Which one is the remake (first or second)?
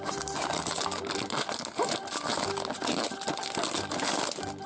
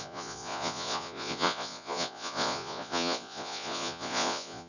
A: second